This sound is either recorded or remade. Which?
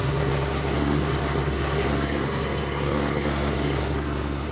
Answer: remade